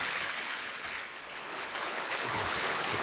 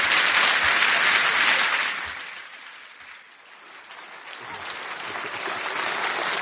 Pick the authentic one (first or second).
second